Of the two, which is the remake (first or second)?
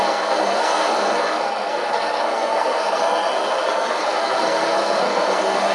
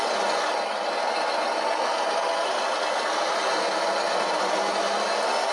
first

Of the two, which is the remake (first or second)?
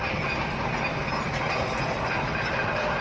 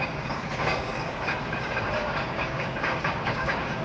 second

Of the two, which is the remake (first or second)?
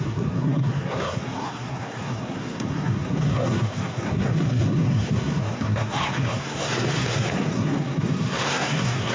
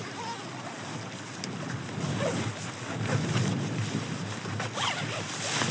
first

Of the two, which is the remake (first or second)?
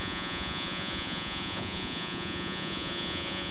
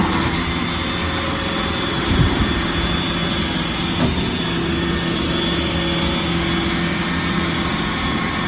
first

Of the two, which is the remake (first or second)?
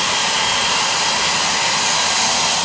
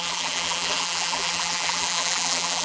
second